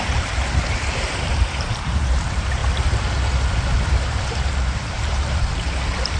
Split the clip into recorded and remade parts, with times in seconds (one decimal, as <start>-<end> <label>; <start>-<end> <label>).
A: 0.0-2.6 remade; 2.6-3.9 recorded; 3.9-6.2 remade